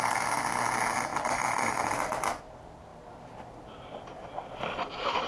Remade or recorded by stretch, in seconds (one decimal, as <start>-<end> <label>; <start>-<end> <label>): 0.0-1.1 recorded; 1.1-2.5 remade; 2.5-2.9 recorded; 2.9-4.7 remade; 4.7-5.3 recorded